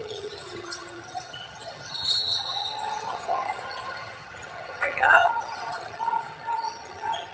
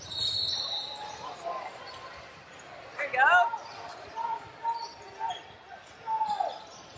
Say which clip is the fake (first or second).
first